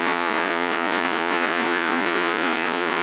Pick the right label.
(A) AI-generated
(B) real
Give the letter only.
A